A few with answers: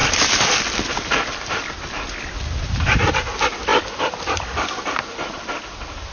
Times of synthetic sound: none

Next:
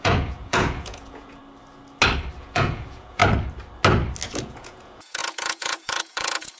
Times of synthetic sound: 0.0-1.4 (vocoder, Vocos); 2.4-3.2; 4.4-6.6

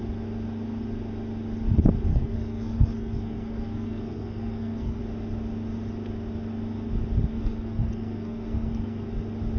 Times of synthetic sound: 2.1-5.0 (codec, SNAC); 7.3-9.1

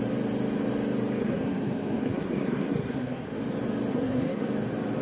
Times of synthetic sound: 1.2-3.4 (codec, SNAC); 3.9-4.5

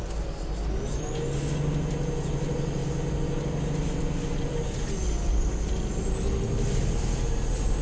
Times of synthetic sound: none

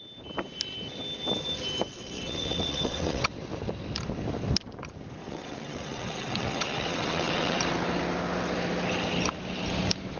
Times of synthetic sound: 1.9-3.3 (vocoder, WaveNeXt); 5.2-7.6

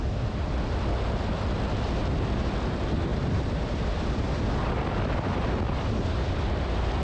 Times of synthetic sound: 0.0-7.0 (vocoder, BigVGAN v2)

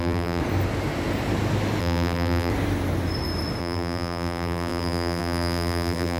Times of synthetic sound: 0.0-0.4 (vocoder, BigVGAN v2); 1.8-2.5; 3.6-6.2